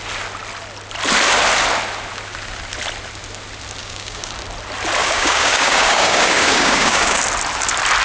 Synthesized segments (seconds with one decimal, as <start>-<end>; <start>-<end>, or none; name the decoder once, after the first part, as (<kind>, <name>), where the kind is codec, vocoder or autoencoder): 3.8-4.3 (codec, DAC); 5.0-7.2